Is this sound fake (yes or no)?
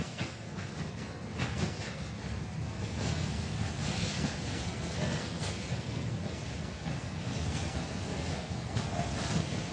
yes